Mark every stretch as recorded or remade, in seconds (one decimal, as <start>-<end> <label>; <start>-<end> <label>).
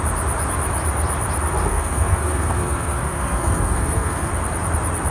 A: 0.0-1.7 recorded; 1.7-4.3 remade; 4.3-5.1 recorded